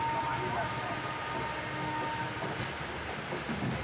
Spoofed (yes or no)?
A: no